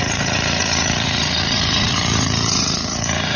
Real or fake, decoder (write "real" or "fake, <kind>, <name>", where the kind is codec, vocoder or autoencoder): fake, vocoder, Vocos